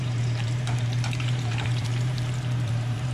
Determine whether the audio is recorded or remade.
remade